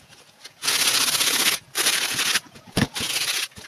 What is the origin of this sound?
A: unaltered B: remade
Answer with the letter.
B